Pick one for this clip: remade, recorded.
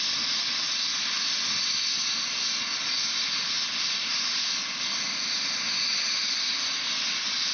recorded